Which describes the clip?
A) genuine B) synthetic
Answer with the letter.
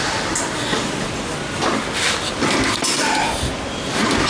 A